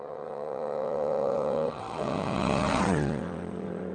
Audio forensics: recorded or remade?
remade